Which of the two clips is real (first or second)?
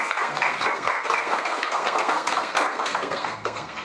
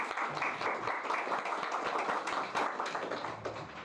second